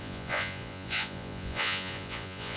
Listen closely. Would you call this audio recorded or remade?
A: remade